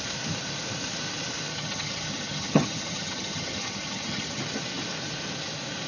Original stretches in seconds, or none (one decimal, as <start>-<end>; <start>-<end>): 0.0-1.5; 4.4-5.9